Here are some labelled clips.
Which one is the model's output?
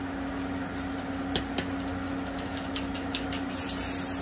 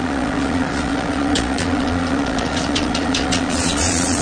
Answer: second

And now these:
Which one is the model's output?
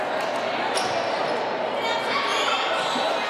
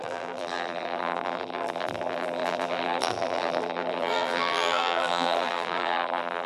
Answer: second